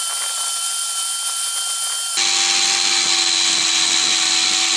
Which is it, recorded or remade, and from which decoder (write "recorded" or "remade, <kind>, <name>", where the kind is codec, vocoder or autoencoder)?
recorded